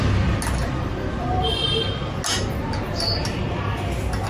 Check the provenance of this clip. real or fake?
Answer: real